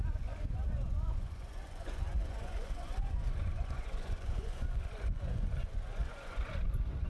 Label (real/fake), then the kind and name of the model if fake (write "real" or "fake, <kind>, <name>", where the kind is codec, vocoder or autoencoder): fake, vocoder, Vocos